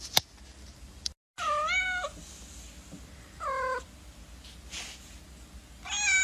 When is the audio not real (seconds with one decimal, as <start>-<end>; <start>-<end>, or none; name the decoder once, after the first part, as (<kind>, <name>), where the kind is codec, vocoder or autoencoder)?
none